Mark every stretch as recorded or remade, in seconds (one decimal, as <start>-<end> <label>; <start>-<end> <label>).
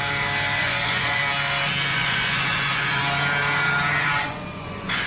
0.0-0.6 recorded; 0.6-1.2 remade; 1.2-1.9 recorded; 1.9-3.0 remade; 3.0-4.0 recorded; 4.0-5.1 remade